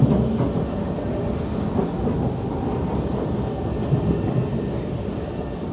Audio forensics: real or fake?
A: real